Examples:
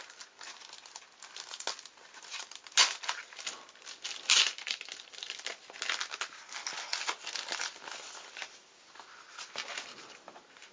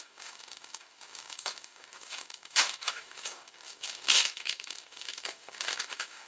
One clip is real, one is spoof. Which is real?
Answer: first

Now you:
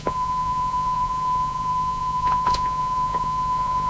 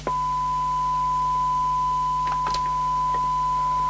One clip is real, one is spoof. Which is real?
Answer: second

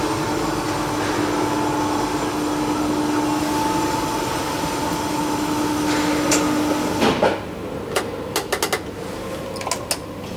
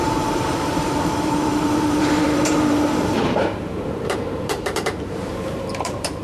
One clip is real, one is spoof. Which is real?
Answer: first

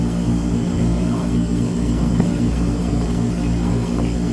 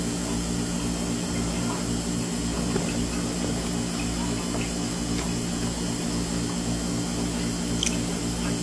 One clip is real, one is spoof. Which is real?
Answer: second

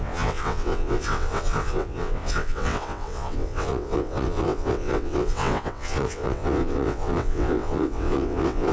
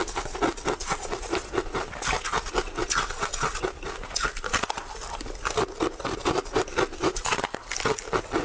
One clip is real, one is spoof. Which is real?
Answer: second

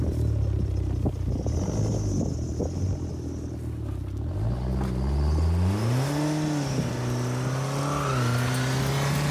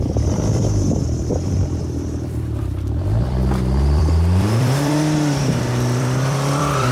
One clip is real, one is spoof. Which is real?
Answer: first